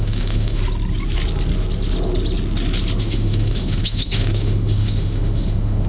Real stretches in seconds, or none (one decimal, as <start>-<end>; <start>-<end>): 0.6-3.0